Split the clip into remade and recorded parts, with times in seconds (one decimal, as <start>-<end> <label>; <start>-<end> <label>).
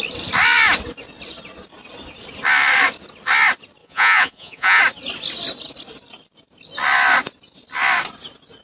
0.0-3.8 recorded; 3.8-4.8 remade; 4.8-8.6 recorded